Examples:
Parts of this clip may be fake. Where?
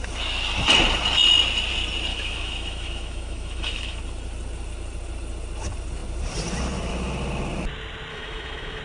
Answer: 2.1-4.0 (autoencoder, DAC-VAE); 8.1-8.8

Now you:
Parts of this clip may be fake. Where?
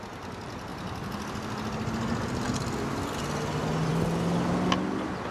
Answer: none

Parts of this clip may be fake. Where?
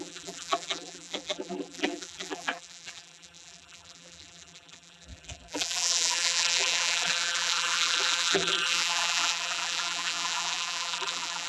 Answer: 0.0-11.5 (vocoder, BigVGAN v2)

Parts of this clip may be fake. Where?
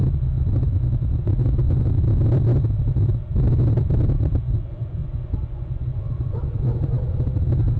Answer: 0.4-2.0 (vocoder, Vocos); 5.0-7.0